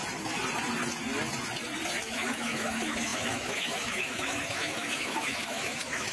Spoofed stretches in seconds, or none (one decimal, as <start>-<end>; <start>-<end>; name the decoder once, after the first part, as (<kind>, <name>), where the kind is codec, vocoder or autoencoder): 2.0-6.1 (autoencoder, DAC-VAE)